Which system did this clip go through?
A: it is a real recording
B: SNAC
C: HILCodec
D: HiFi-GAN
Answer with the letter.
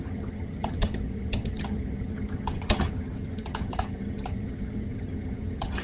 D